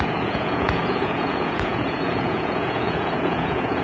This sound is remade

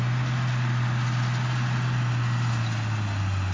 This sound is recorded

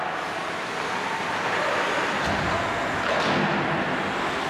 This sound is recorded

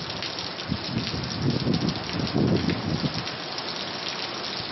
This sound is recorded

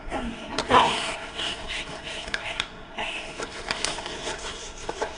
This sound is remade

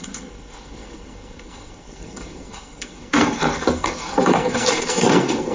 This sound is remade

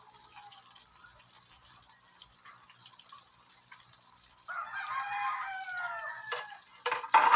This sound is remade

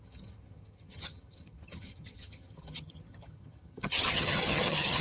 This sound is remade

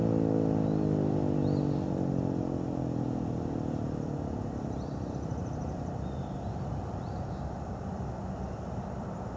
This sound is recorded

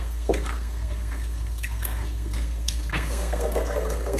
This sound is remade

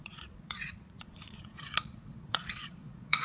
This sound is remade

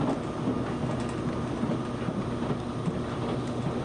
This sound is recorded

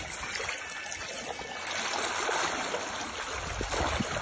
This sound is recorded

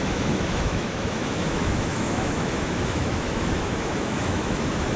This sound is remade